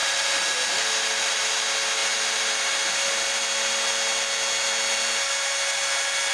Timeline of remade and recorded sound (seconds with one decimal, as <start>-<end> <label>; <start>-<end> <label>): 0.0-6.3 recorded